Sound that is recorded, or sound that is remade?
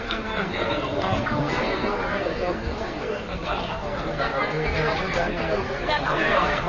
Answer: remade